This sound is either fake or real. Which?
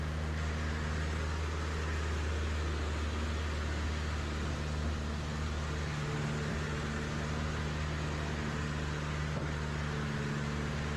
real